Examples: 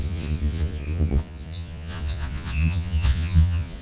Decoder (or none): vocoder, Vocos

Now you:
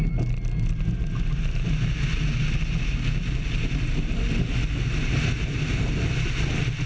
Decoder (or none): none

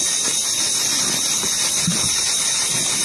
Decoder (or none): none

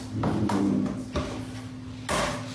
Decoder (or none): none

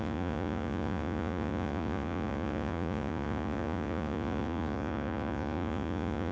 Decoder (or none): vocoder, Vocos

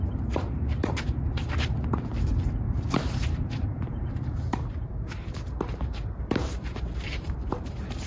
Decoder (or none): vocoder, BigVGAN v2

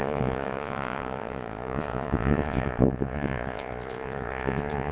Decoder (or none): vocoder, Vocos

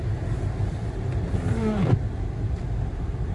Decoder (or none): none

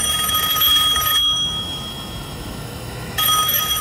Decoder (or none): autoencoder, DAC-VAE